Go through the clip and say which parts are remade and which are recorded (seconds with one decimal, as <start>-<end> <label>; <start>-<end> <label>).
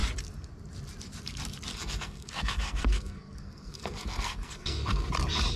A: 0.0-1.7 recorded; 1.7-5.1 remade; 5.1-5.6 recorded